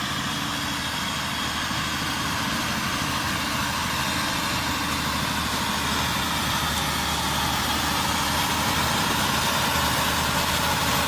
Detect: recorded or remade recorded